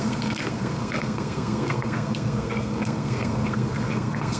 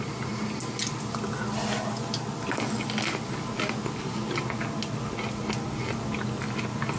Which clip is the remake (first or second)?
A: first